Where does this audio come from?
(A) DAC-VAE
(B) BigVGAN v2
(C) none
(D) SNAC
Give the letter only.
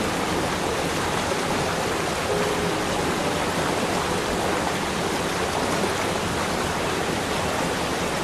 C